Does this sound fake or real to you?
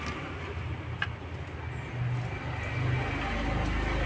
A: real